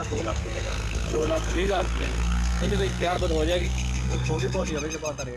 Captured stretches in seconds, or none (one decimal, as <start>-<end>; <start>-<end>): 3.2-3.6; 4.7-5.4